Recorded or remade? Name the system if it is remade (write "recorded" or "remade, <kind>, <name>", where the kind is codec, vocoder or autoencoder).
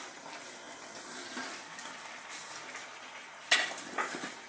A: recorded